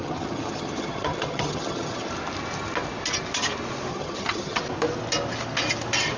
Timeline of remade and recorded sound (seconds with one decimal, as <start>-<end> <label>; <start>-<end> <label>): 0.0-2.1 remade; 2.1-3.9 recorded; 3.9-4.6 remade; 4.6-6.2 recorded